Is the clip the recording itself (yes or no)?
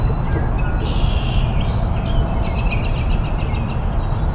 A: yes